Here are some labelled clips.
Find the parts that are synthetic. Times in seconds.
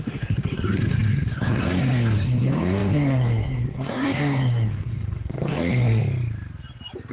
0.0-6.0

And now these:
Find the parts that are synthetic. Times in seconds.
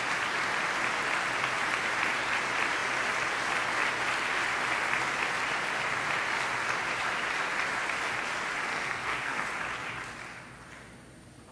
8.7-9.4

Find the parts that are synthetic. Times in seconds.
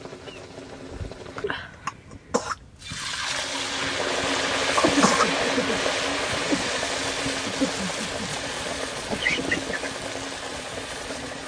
6.1-6.8; 8.3-9.4; 10.5-11.5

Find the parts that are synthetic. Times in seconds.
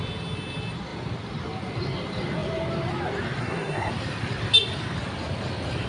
3.4-3.9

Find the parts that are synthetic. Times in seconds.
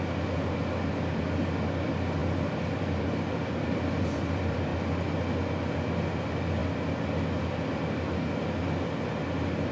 2.2-4.9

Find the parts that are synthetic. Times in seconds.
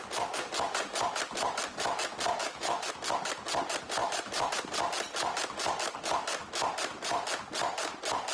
2.4-2.9; 4.0-4.5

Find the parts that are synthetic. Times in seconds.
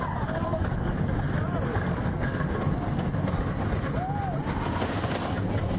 0.5-1.0; 1.7-2.5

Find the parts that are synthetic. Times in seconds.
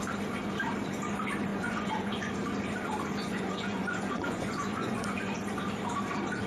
1.5-2.3; 3.2-5.4